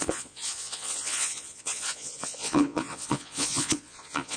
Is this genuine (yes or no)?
no